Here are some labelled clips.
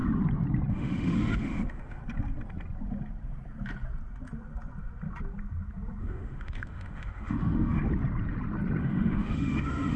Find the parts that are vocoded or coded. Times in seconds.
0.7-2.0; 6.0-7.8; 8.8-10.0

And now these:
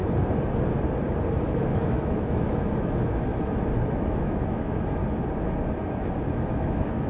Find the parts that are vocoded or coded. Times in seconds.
1.4-3.3; 3.9-5.0; 6.5-7.1

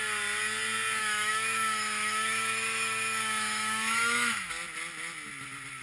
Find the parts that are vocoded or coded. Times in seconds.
1.0-4.5

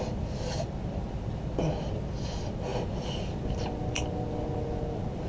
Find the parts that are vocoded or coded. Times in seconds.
none

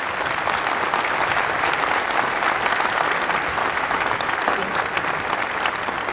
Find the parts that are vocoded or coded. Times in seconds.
3.6-4.4

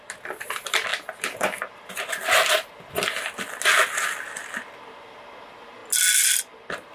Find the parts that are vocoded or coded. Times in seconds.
none

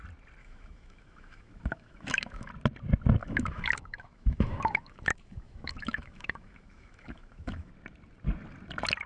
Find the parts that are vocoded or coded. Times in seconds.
0.4-2.5; 3.2-7.7

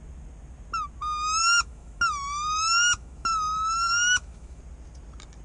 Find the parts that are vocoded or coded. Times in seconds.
1.4-4.6